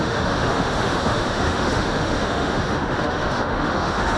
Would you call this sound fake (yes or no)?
yes